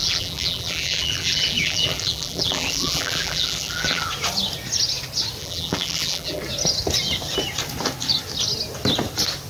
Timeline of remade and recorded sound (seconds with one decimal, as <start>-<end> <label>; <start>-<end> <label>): 0.0-4.1 remade; 4.1-5.4 recorded; 5.4-6.4 remade; 6.4-9.5 recorded